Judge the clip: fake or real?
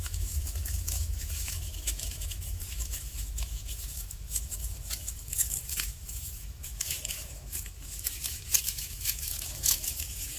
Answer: fake